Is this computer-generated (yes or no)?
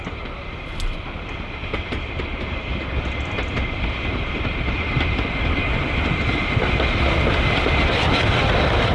no